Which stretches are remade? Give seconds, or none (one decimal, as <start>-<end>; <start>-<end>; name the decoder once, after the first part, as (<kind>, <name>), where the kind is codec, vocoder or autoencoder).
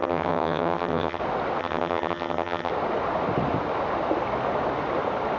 0.0-1.2 (vocoder, HiFi-GAN); 1.6-2.7